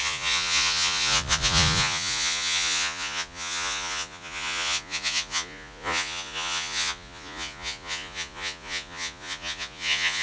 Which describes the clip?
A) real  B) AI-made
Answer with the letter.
B